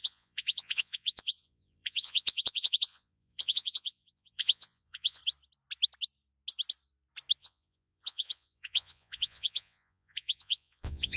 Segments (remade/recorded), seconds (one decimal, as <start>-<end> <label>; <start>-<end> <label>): 0.0-5.2 remade; 5.2-7.4 recorded; 7.4-11.2 remade